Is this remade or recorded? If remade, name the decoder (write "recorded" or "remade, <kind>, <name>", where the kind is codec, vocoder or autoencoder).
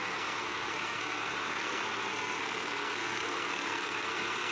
remade, codec, SNAC